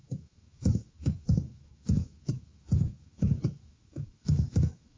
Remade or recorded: remade